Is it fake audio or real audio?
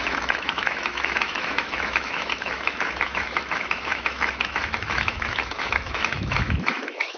fake